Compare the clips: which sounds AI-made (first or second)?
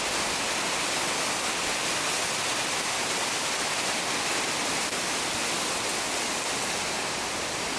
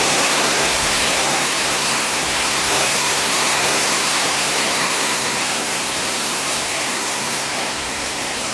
second